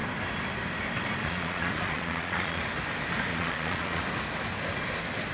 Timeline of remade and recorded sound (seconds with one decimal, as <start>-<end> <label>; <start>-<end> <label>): 0.0-1.2 recorded; 1.2-2.6 remade; 2.6-3.3 recorded; 3.3-4.0 remade; 4.0-5.3 recorded

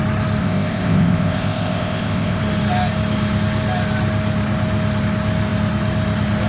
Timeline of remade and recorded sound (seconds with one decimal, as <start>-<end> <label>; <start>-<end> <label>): 0.0-0.4 recorded; 0.4-2.4 remade; 2.4-6.5 recorded